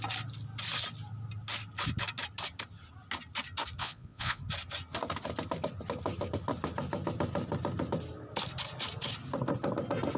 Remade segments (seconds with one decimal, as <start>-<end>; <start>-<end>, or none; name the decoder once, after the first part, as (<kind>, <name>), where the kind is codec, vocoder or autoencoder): 3.8-4.4 (vocoder, Vocos)